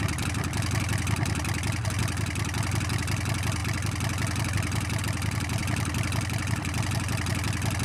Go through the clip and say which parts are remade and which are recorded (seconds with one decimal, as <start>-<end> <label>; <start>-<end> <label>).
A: 0.0-7.8 recorded